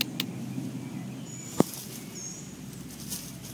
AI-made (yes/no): no